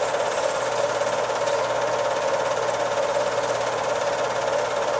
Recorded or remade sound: recorded